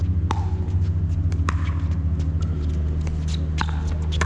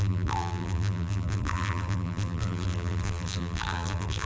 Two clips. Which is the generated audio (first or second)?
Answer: second